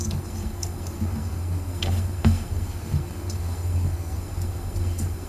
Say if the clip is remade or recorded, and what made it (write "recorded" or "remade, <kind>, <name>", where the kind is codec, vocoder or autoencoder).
remade, codec, SNAC